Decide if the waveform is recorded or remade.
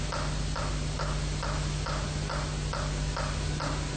recorded